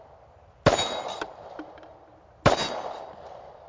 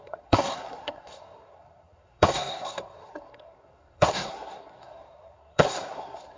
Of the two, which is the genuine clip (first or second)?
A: first